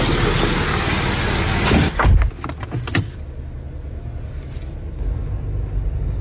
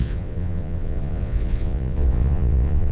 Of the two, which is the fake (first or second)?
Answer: second